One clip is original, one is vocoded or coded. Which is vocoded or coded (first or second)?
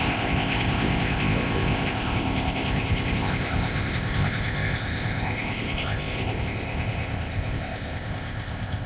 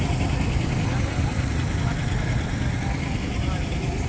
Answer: first